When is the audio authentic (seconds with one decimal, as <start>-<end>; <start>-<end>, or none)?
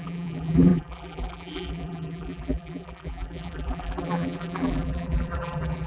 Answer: none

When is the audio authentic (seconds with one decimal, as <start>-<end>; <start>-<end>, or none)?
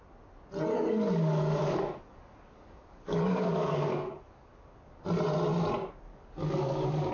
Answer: 0.0-0.7; 5.0-6.1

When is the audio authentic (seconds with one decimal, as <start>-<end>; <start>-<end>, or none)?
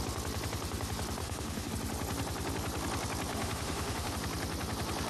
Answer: 0.0-1.2; 1.7-3.3; 4.1-5.1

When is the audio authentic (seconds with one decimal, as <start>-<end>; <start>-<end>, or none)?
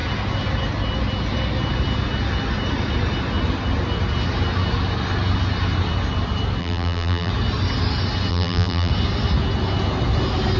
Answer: 0.0-6.6; 7.3-8.3; 8.9-10.6